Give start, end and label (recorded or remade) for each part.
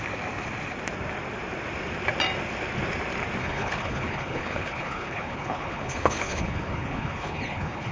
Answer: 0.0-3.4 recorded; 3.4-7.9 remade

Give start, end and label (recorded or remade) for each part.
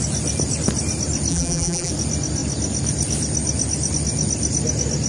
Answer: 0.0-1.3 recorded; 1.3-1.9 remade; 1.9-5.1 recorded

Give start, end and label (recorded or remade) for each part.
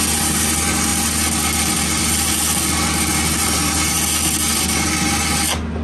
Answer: 0.0-5.8 recorded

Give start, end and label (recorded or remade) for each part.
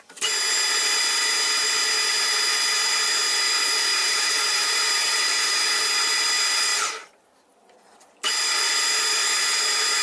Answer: 0.0-4.0 recorded; 4.0-5.5 remade; 5.5-10.0 recorded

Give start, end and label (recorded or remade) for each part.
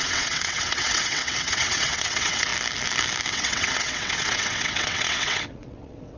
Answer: 0.0-2.5 remade; 2.5-3.3 recorded; 3.3-6.2 remade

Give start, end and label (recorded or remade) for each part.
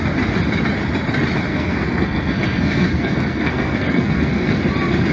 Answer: 0.0-1.5 recorded; 1.5-4.6 remade; 4.6-5.1 recorded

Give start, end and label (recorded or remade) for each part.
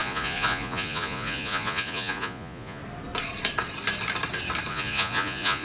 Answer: 0.0-2.8 remade; 2.8-4.7 recorded; 4.7-5.6 remade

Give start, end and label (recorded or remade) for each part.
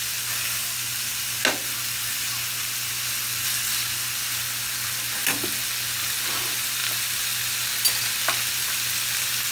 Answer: 0.0-9.5 recorded